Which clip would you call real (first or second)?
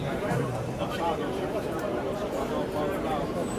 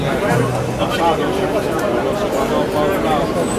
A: second